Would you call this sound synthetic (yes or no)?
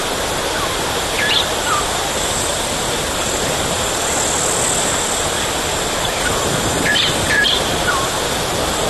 no